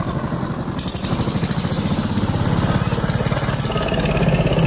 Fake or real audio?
real